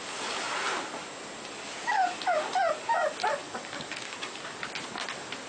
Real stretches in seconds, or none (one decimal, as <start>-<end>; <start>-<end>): 0.0-3.4; 4.7-5.5